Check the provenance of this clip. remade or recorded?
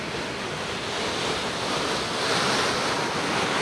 recorded